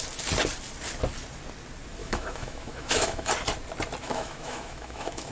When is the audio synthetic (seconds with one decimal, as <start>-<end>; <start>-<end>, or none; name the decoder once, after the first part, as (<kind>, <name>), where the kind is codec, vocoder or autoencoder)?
2.0-3.3 (autoencoder, DAC-VAE); 4.0-5.3